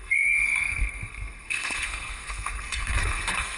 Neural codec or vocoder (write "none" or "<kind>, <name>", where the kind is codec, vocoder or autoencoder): codec, SNAC